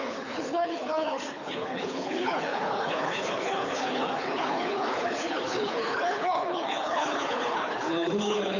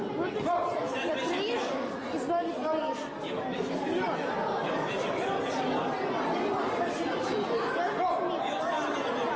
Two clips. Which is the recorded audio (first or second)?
second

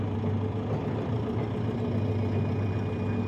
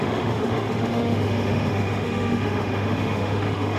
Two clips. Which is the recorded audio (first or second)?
first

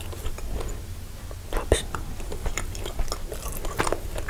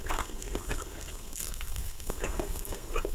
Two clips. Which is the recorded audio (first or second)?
first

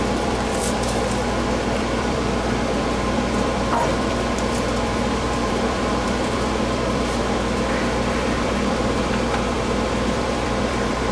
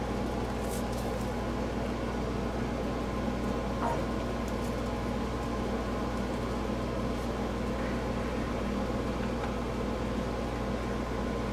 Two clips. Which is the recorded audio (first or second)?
second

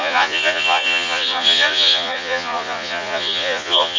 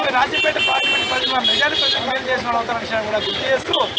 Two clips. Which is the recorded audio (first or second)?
second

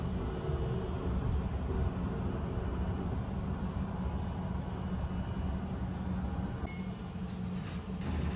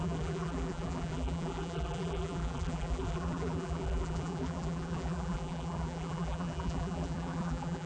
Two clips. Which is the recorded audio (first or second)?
first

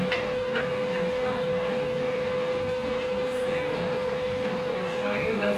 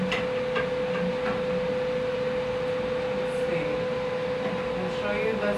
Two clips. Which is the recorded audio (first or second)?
second